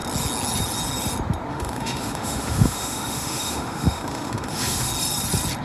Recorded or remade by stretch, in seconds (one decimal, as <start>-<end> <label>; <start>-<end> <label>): 0.0-1.5 recorded; 1.5-4.9 remade; 4.9-5.6 recorded